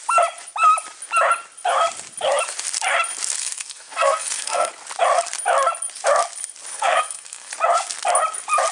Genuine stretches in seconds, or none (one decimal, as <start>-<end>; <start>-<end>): 0.0-3.4; 4.7-6.7; 7.5-8.7